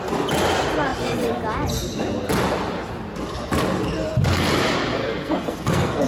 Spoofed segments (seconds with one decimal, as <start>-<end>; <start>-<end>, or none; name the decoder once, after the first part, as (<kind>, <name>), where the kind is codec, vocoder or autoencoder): 5.0-6.1 (codec, SNAC)